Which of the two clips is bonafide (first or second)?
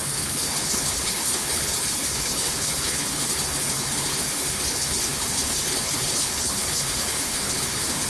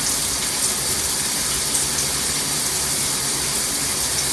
second